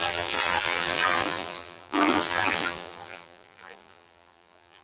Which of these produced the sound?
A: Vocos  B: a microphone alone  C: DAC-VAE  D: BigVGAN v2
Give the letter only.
D